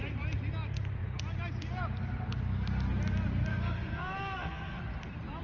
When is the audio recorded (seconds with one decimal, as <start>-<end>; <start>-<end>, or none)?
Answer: 0.0-3.5; 4.8-5.4